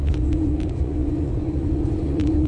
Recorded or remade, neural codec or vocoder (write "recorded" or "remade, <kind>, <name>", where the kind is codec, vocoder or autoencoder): remade, vocoder, Vocos